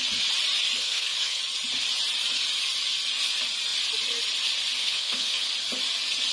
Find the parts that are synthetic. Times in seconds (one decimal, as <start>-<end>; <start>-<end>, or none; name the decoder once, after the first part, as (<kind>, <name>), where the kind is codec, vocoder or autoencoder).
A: 0.8-1.4 (codec, HILCodec); 4.8-5.5

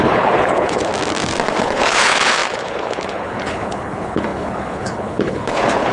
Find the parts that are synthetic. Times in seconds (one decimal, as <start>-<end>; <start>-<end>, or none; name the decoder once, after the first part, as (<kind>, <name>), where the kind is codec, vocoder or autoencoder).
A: 0.0-0.9 (codec, HILCodec); 1.6-5.9

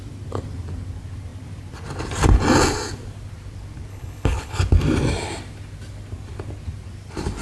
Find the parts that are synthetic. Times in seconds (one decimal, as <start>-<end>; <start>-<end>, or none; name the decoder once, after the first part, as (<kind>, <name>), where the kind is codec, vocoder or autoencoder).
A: 3.9-4.6 (codec, HILCodec)

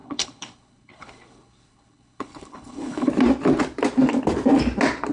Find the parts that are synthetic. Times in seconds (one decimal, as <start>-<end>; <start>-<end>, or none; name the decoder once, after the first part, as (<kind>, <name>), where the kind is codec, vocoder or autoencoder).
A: 0.0-3.1 (codec, HILCodec)

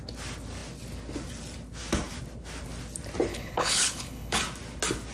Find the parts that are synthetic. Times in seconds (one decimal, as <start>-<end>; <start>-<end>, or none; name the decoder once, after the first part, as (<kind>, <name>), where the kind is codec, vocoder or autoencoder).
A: 3.3-4.4 (codec, HILCodec)

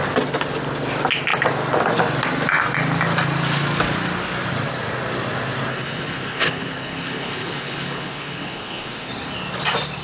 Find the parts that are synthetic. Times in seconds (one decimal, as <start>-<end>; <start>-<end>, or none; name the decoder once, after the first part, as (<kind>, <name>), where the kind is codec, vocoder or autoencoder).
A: 5.7-9.1 (codec, HILCodec)

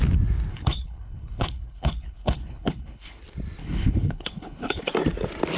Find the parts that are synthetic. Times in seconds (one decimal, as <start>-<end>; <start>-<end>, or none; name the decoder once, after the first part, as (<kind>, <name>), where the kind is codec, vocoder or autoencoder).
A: 0.5-3.2 (codec, HILCodec); 3.6-4.9

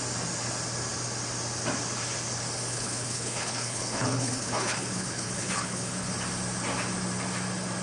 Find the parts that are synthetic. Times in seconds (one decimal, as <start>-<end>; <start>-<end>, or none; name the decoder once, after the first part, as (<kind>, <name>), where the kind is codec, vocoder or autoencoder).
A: 2.7-6.1 (codec, HILCodec)